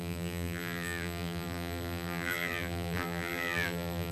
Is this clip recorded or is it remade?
remade